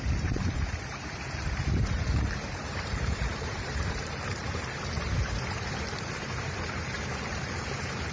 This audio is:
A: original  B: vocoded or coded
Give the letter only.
B